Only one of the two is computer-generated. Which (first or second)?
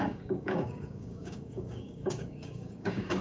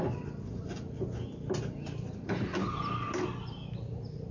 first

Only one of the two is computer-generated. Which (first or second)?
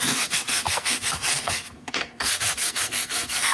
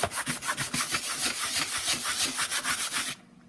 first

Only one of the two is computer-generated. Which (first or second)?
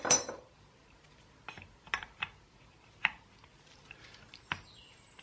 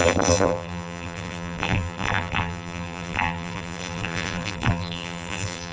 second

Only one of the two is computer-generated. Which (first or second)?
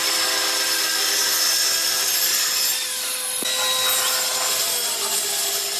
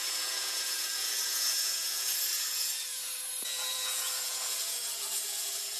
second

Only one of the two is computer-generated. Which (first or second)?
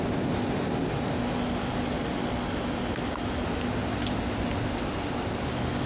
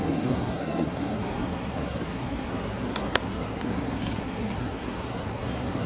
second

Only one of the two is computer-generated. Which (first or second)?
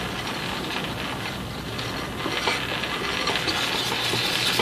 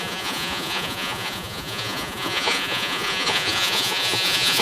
second